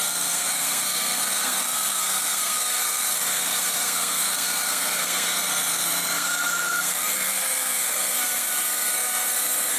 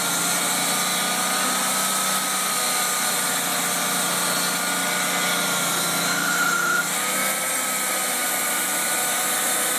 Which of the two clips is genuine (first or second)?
second